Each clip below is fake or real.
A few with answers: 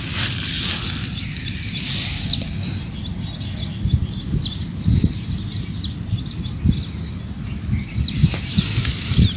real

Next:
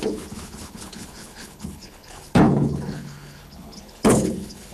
fake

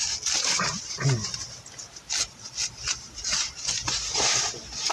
real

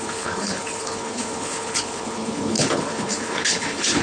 fake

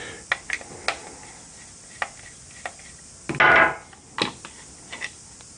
real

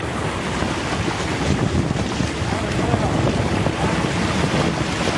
real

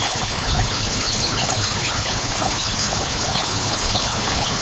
fake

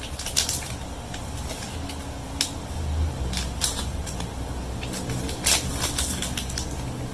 real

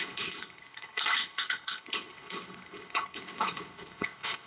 fake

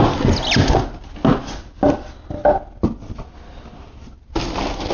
real